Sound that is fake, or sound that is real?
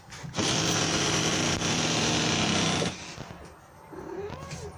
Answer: real